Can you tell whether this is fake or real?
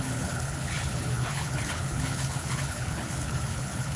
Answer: fake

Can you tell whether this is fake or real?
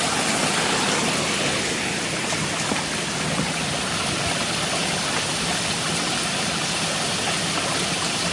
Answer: real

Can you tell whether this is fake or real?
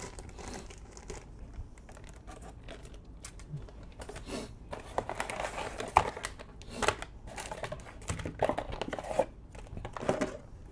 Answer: real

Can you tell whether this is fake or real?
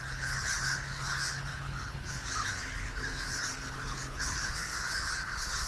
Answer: fake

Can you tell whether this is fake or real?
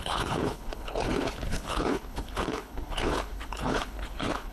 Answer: fake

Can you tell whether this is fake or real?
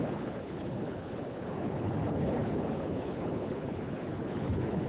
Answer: fake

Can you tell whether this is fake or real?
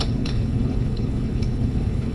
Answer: fake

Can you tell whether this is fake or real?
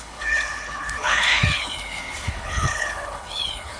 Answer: fake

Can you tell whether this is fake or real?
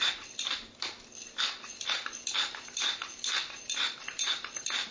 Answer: real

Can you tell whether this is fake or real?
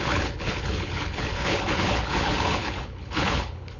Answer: fake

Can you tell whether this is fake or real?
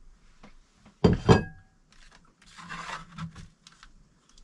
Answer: real